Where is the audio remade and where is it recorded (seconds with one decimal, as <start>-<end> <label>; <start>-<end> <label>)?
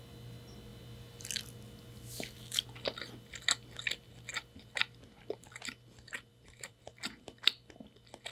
0.0-6.3 recorded; 6.3-6.8 remade; 6.8-8.3 recorded